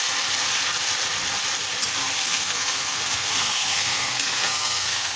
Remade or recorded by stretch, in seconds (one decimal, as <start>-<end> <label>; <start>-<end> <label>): 0.0-2.2 recorded; 2.2-5.2 remade